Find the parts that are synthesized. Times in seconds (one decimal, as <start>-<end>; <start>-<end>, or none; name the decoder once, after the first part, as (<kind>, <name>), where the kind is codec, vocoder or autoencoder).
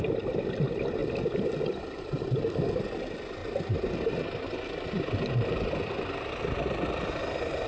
1.0-2.0 (vocoder, BigVGAN v2)